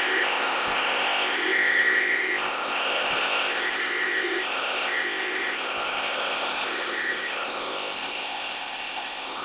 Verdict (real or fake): fake